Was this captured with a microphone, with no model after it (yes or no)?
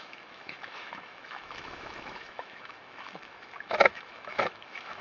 no